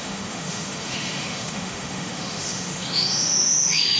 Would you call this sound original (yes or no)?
no